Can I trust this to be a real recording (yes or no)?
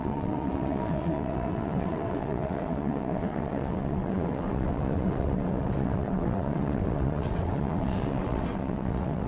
no